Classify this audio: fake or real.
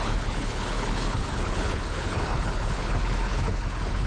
fake